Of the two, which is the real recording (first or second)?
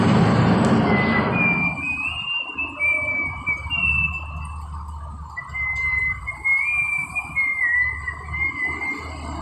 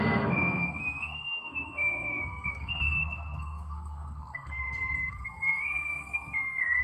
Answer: first